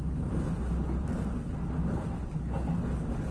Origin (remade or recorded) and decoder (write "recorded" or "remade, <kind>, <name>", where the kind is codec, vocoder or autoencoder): recorded